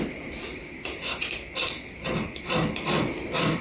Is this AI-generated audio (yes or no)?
yes